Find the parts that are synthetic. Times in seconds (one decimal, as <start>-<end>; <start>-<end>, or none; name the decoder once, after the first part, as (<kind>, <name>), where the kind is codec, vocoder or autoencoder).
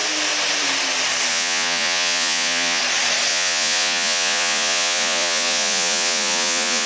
1.3-2.8 (vocoder, Vocos); 3.3-6.9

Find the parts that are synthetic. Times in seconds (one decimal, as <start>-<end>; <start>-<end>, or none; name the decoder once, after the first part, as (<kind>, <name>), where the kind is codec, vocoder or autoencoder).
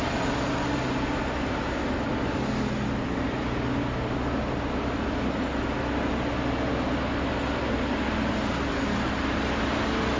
none